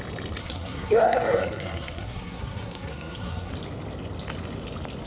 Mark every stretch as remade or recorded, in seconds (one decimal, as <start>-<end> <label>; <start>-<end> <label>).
0.0-0.4 recorded; 0.4-3.5 remade; 3.5-5.1 recorded